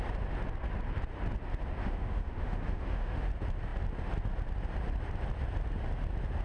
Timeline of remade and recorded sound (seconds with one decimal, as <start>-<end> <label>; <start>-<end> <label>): 0.0-1.8 recorded; 1.8-3.3 remade; 3.3-6.4 recorded